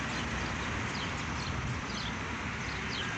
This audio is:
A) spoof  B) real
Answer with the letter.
B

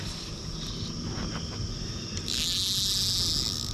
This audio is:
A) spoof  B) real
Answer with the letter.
B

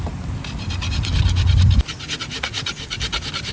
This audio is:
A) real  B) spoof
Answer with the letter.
A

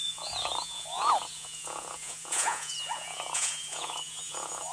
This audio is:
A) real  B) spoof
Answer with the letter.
B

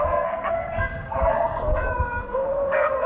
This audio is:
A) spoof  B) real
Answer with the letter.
A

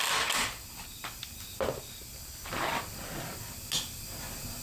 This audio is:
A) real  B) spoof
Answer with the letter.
A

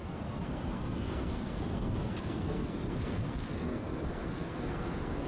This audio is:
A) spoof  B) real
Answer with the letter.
A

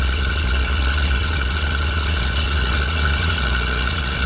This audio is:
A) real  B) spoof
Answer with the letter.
B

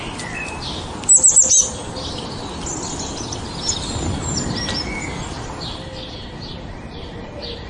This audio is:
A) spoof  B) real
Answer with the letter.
B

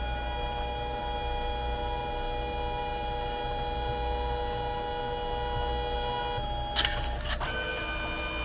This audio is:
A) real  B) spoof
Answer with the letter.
A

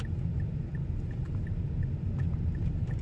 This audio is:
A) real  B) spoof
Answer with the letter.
A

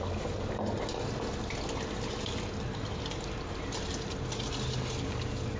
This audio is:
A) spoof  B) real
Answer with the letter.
B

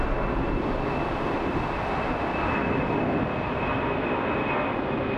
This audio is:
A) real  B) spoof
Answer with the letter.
A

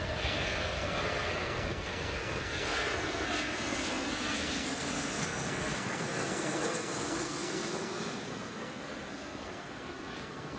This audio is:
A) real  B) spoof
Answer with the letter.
B